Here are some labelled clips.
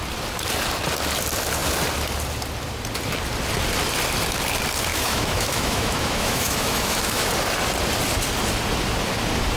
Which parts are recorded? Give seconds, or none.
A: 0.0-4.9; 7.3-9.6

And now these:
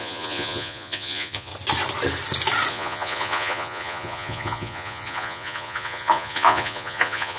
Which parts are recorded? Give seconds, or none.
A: 1.5-2.7

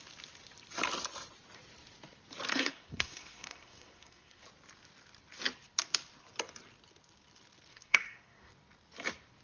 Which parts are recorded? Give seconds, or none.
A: 0.0-2.5; 4.4-7.7; 8.5-9.4